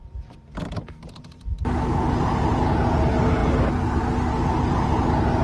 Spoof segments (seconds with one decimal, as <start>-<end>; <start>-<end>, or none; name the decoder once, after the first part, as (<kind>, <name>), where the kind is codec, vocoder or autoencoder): none